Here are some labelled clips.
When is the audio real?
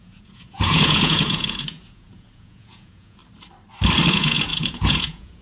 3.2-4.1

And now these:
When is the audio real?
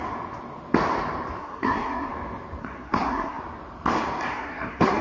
0.0-1.4; 2.1-2.6; 3.4-4.3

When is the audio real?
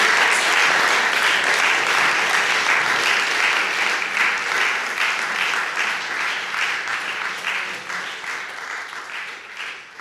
0.0-10.0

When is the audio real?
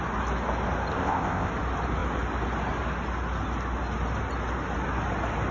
0.0-0.9; 1.5-5.5